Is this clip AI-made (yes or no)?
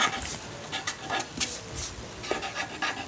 no